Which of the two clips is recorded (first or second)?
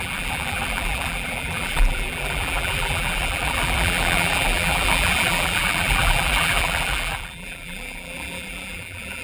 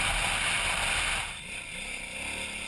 second